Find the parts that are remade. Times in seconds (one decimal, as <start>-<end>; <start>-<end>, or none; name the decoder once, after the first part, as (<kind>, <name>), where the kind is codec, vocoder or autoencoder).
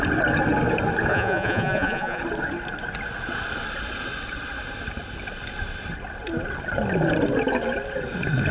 1.1-2.2 (vocoder, Vocos)